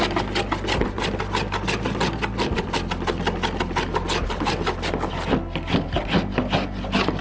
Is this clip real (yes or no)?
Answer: yes